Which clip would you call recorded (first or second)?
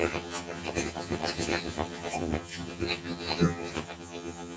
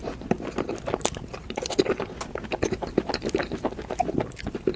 second